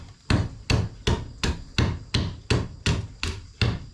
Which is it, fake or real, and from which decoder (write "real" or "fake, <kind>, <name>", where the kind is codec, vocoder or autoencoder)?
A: real